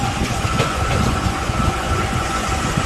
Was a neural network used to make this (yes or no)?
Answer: yes